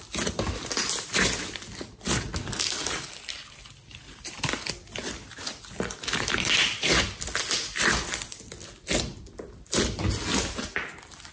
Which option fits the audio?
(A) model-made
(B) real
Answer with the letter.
B